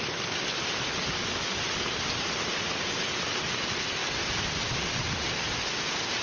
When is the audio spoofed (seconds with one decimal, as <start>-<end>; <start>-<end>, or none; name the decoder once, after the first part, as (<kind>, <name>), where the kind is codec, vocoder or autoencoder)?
none